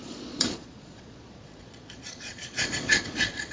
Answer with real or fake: fake